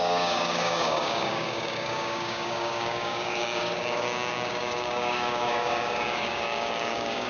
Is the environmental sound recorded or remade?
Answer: remade